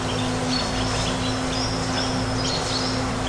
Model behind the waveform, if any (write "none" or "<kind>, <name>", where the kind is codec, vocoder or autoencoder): none